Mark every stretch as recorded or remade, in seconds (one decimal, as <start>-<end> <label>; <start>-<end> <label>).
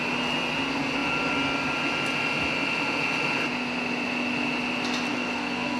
0.0-5.1 recorded; 5.1-5.8 remade